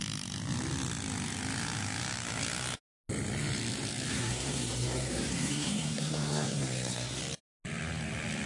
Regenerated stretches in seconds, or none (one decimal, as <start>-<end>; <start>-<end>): 4.1-7.2